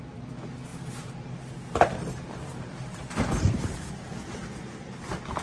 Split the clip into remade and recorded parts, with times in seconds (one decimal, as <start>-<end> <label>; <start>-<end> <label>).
0.0-0.7 recorded; 0.7-3.9 remade; 3.9-5.4 recorded

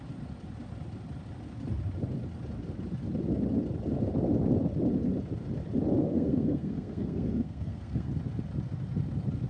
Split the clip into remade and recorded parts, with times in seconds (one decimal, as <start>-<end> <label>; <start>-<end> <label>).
0.0-6.0 recorded; 6.0-8.1 remade; 8.1-9.5 recorded

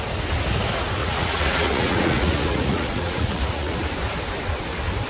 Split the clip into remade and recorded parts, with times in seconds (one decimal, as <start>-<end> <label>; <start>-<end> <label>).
0.0-1.0 recorded; 1.0-3.8 remade; 3.8-5.1 recorded

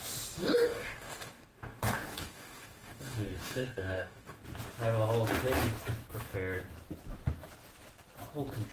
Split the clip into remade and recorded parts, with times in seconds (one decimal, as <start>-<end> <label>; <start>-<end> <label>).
0.0-0.4 recorded; 0.4-4.4 remade; 4.4-8.7 recorded

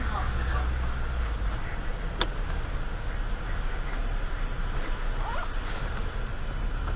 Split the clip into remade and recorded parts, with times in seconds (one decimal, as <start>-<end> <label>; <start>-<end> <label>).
0.0-7.0 recorded

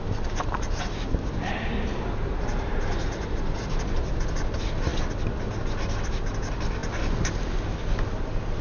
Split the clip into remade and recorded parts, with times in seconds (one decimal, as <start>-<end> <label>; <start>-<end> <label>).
0.0-8.6 recorded

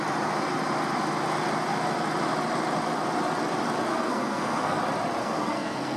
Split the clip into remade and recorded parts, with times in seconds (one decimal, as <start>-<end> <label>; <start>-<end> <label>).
0.0-3.9 recorded; 3.9-4.8 remade; 4.8-5.2 recorded; 5.2-6.0 remade

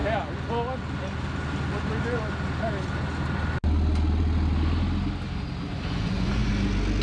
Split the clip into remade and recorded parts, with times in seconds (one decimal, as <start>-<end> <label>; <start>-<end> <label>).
0.0-5.7 recorded; 5.7-6.5 remade; 6.5-7.0 recorded